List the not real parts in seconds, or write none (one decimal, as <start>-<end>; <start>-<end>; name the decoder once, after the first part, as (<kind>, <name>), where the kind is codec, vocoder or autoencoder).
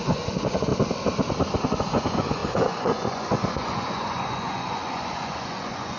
0.0-0.7 (vocoder, Vocos); 1.9-6.0